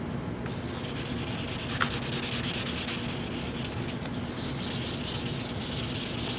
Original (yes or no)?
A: yes